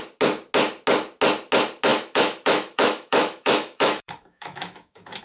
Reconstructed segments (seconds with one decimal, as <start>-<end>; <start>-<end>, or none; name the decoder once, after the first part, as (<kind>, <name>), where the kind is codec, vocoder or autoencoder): 1.9-5.2 (autoencoder, DAC-VAE)